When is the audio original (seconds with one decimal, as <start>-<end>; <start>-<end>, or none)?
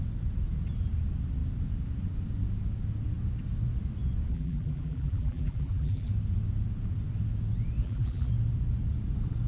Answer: 0.0-4.3; 6.1-7.8; 8.3-9.5